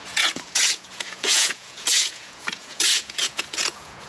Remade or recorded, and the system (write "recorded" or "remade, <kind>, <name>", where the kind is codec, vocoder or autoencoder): remade, vocoder, Vocos